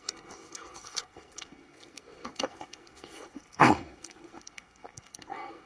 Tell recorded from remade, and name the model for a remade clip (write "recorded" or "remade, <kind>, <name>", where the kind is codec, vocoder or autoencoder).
remade, codec, SNAC